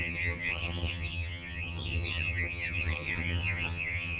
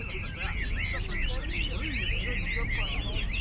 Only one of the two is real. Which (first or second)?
second